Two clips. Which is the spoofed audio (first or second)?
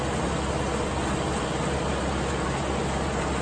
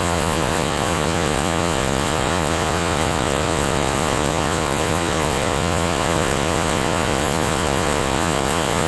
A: second